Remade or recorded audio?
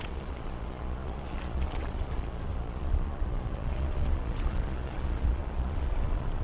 remade